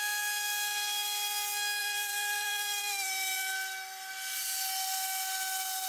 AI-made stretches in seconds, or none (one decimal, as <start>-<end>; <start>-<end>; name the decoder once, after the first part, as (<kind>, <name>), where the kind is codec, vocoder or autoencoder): 1.8-3.5 (vocoder, BigVGAN v2)